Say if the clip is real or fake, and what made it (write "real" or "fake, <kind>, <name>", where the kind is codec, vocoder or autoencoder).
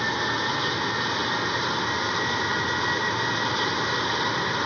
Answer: real